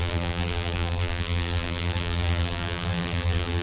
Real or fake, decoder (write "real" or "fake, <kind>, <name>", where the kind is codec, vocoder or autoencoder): fake, vocoder, BigVGAN v2